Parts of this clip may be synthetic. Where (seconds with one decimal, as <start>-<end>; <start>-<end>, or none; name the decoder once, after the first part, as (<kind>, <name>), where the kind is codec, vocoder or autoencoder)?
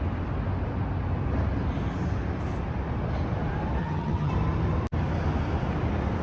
3.8-4.3 (vocoder, HiFi-GAN)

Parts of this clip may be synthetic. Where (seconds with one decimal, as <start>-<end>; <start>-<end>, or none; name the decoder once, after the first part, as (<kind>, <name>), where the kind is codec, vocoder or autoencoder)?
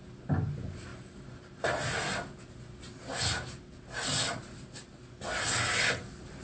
none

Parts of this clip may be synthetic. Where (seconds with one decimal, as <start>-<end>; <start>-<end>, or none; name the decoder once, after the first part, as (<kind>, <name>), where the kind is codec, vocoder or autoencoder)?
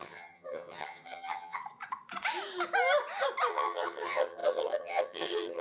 0.0-1.6 (vocoder, HiFi-GAN); 3.5-5.6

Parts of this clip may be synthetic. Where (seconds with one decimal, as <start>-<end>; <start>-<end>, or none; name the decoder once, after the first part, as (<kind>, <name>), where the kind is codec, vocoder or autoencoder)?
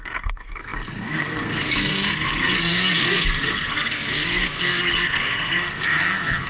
0.0-6.5 (codec, SNAC)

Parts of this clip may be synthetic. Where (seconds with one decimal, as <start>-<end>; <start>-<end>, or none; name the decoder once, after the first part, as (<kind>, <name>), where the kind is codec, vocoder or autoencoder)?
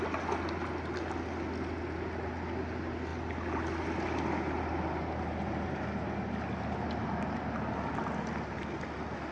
none